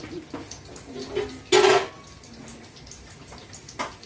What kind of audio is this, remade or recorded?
recorded